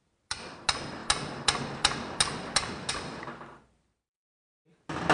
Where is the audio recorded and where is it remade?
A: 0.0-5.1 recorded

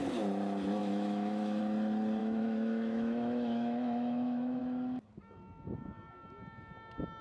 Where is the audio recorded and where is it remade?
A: 0.0-0.8 recorded; 0.8-1.6 remade; 1.6-2.2 recorded; 2.2-4.6 remade; 4.6-7.2 recorded